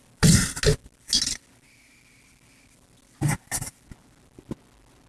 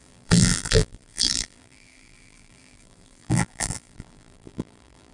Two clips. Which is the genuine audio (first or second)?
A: first